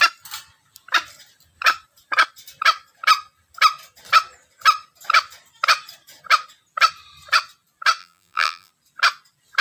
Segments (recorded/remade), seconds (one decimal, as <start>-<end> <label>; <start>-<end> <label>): 0.0-8.0 recorded; 8.0-8.7 remade; 8.7-9.6 recorded

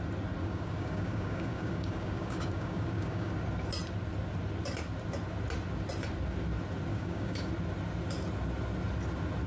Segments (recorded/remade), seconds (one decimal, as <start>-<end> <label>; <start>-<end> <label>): 0.0-0.4 recorded; 0.4-3.3 remade; 3.3-6.9 recorded; 6.9-7.5 remade; 7.5-9.5 recorded

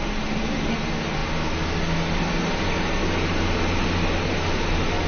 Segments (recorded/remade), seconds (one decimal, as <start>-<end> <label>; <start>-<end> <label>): 0.0-5.1 recorded